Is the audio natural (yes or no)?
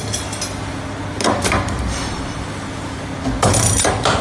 yes